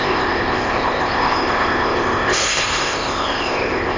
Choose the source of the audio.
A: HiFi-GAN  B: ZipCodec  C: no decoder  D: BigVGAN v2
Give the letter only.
B